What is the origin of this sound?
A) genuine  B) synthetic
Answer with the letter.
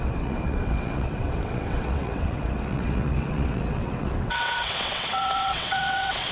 B